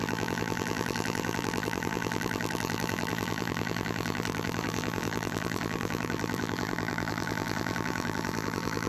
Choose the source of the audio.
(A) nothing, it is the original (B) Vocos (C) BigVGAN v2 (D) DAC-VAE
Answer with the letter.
C